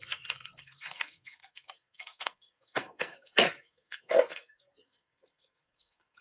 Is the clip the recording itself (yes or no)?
no